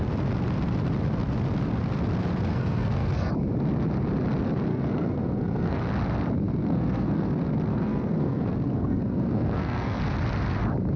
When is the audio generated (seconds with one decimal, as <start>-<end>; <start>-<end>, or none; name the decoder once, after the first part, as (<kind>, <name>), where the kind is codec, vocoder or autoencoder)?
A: 2.5-3.3 (codec, SNAC); 4.7-5.8; 6.6-7.3; 7.7-10.0